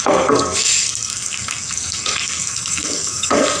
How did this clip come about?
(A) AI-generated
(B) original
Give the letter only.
A